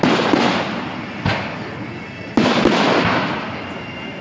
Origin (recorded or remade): recorded